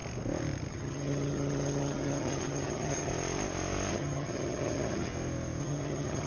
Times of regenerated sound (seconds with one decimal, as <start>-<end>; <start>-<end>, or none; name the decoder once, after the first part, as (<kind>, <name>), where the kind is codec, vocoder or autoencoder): 0.7-3.1 (vocoder, HiFi-GAN); 3.9-5.1; 5.6-6.3